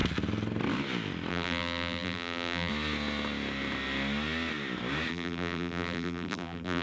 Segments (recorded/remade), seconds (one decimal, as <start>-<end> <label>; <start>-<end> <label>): 0.0-1.3 recorded; 1.3-2.7 remade; 2.7-5.1 recorded; 5.1-6.8 remade